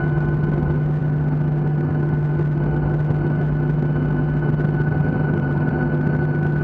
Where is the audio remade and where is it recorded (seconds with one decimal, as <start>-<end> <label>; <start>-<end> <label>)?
0.0-5.0 recorded; 5.0-5.7 remade; 5.7-6.6 recorded